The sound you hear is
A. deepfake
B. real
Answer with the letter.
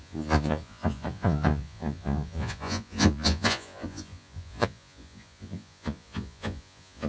A